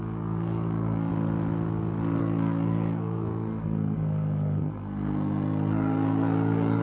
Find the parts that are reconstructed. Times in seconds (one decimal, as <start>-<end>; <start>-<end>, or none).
0.0-1.1; 2.2-6.8